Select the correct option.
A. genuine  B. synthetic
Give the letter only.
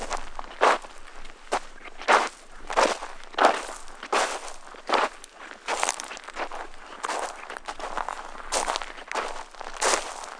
A